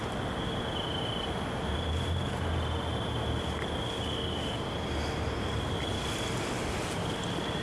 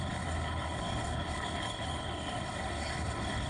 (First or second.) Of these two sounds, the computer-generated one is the second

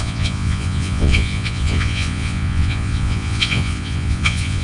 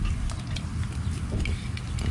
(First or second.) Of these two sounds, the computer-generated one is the first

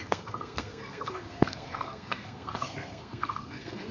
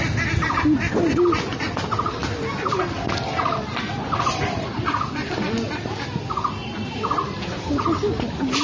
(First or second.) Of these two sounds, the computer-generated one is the first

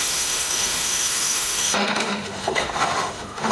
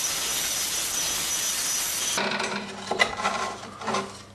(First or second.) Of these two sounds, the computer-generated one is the first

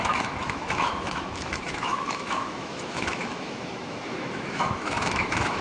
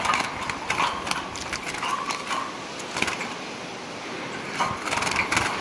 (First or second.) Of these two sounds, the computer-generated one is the first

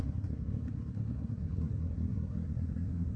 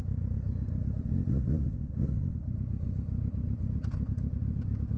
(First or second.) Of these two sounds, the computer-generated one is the first